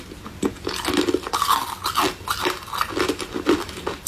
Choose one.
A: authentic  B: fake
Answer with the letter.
A